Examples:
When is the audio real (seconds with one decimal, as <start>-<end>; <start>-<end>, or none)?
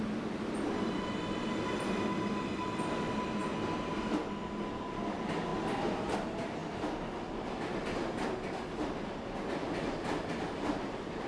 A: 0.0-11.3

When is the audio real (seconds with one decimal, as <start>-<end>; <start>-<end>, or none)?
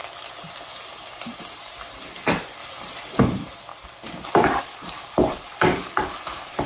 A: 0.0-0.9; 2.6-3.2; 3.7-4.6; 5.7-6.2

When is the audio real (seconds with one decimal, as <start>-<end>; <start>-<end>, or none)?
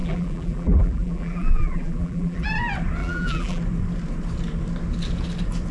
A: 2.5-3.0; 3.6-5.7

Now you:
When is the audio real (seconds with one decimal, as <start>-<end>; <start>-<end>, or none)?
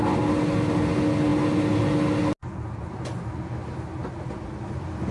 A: 0.0-5.1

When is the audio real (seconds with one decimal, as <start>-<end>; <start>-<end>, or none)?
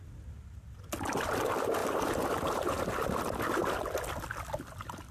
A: 0.0-1.8; 2.8-5.1